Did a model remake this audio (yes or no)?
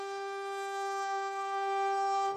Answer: yes